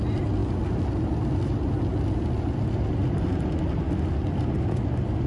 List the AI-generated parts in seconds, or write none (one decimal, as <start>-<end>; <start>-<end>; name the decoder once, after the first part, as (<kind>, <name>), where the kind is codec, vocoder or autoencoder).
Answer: none

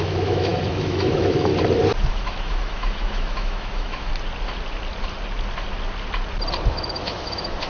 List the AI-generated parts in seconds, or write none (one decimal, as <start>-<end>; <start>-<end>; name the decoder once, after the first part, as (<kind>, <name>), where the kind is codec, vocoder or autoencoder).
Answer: 0.0-1.5 (autoencoder, DAC-VAE); 2.1-4.1; 6.7-7.7

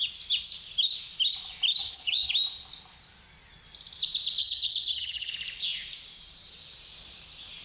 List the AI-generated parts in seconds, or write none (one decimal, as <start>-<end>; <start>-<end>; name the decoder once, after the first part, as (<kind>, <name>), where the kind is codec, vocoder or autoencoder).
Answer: 1.8-2.3 (vocoder, HiFi-GAN); 4.4-5.3

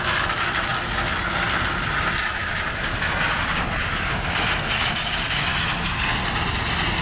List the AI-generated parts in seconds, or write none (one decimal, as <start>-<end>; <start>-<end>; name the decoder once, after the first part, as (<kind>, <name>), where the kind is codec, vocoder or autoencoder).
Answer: none